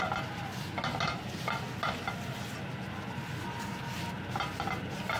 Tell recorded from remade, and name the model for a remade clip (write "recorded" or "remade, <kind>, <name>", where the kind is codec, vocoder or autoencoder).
recorded